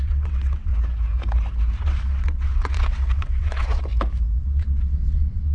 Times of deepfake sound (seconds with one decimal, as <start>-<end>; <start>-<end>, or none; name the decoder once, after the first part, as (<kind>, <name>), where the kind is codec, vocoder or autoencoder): 0.0-0.7 (vocoder, WaveNeXt); 1.8-3.9; 4.4-5.5